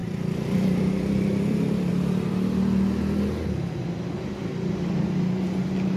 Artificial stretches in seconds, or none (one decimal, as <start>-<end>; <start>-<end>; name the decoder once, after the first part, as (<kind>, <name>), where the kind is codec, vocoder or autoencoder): 0.0-1.9 (vocoder, BigVGAN v2)